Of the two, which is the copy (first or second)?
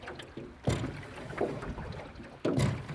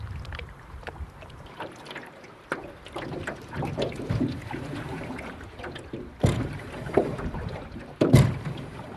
second